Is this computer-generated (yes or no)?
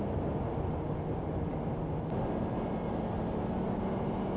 no